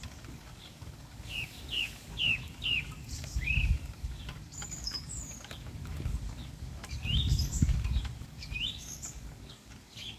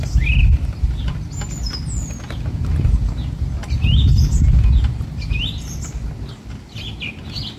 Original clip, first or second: second